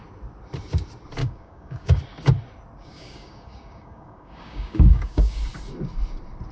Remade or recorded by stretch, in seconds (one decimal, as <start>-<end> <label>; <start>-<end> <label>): 0.0-1.2 recorded; 1.2-2.0 remade; 2.0-2.8 recorded; 2.8-5.4 remade; 5.4-6.5 recorded

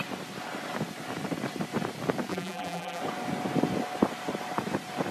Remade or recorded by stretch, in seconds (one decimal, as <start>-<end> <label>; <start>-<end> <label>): 0.0-2.3 recorded; 2.3-3.0 remade; 3.0-5.1 recorded